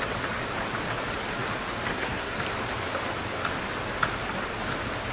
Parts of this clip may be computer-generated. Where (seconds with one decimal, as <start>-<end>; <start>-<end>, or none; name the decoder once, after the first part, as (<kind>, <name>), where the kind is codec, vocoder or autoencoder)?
1.9-2.4 (codec, SNAC)